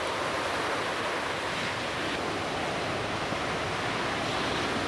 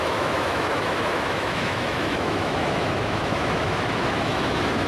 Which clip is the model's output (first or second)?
second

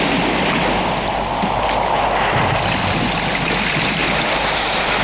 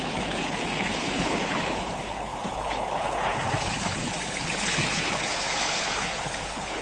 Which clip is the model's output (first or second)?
second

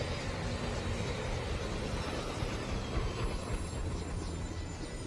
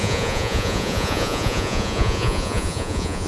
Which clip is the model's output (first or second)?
second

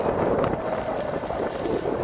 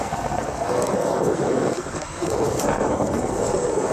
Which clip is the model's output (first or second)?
second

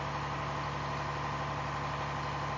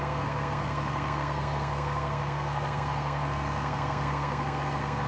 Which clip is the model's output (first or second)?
second